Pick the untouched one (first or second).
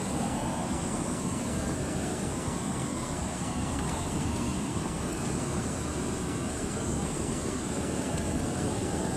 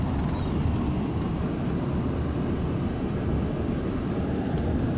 second